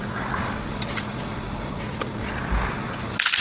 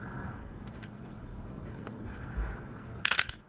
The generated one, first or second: second